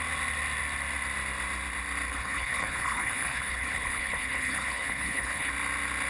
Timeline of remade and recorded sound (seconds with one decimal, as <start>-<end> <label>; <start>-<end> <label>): 0.0-2.1 recorded; 2.1-5.5 remade; 5.5-6.1 recorded